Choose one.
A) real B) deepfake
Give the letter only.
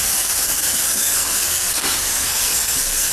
B